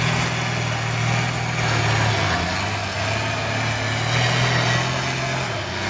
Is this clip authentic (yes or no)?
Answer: yes